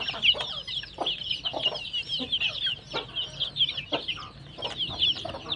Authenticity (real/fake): real